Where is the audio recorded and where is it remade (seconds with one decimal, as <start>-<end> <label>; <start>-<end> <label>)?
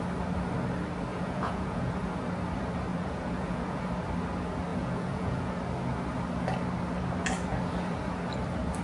0.0-1.1 recorded; 1.1-1.9 remade; 1.9-2.9 recorded; 2.9-3.8 remade; 3.8-4.7 recorded; 4.7-5.5 remade; 5.5-8.8 recorded